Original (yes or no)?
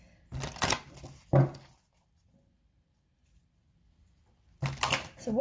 yes